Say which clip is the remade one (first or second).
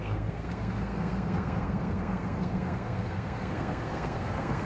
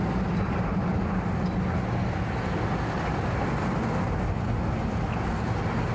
first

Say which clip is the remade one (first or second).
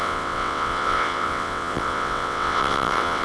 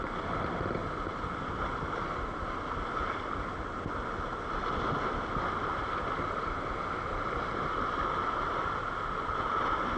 first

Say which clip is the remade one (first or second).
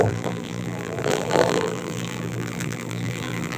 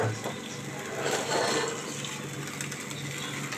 first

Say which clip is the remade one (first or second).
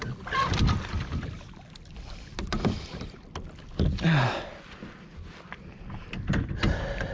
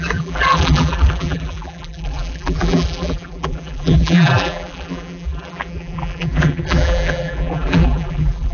second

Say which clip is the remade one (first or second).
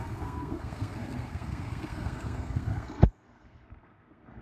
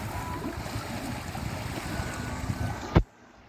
first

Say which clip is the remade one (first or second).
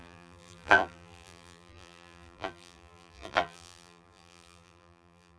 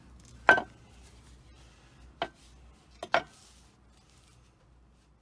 first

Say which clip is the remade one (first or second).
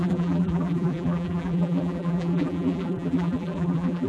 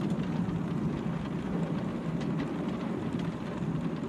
first